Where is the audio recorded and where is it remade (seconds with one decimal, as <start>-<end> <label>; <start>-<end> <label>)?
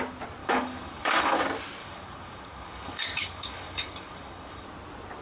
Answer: 0.0-0.4 recorded; 0.4-1.4 remade; 1.4-1.8 recorded; 1.8-4.7 remade; 4.7-5.2 recorded